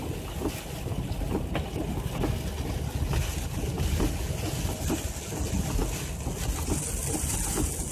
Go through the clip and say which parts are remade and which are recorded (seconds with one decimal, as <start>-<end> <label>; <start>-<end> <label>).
0.0-7.9 recorded